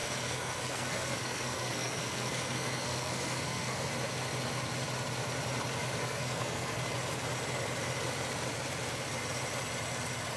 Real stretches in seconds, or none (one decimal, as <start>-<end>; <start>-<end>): 3.9-6.0; 6.9-10.4